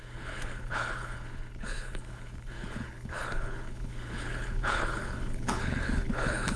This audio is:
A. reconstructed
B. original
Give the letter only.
A